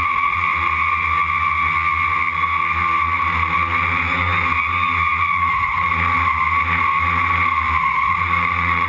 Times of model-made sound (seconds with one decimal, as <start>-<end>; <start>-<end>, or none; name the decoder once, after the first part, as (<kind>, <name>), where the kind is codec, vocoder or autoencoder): 0.0-0.5 (vocoder, Vocos); 5.2-5.9; 7.8-8.9